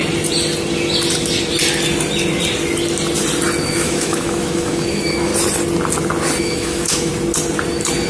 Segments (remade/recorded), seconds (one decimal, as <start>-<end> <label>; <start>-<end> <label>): 0.0-3.6 recorded; 3.6-5.3 remade; 5.3-6.4 recorded; 6.4-7.1 remade; 7.1-8.1 recorded

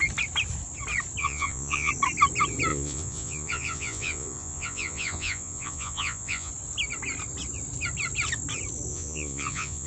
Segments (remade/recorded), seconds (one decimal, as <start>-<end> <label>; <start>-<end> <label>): 0.0-1.2 recorded; 1.2-1.9 remade; 1.9-2.7 recorded; 2.7-6.5 remade; 6.5-8.9 recorded; 8.9-9.9 remade

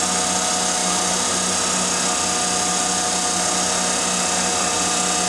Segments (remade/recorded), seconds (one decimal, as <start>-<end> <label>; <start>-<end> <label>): 0.0-5.3 recorded